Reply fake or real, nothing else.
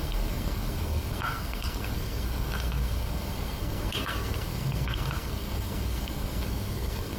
fake